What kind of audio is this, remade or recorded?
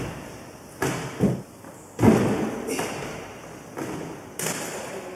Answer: recorded